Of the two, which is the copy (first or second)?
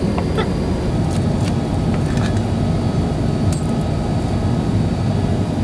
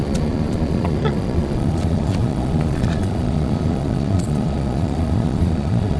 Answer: second